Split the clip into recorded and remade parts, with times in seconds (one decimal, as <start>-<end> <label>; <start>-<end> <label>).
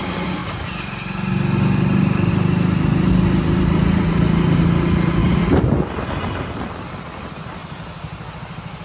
0.0-5.2 recorded; 5.2-6.6 remade; 6.6-7.6 recorded; 7.6-8.3 remade; 8.3-8.8 recorded